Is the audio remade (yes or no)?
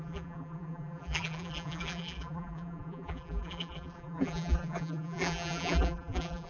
yes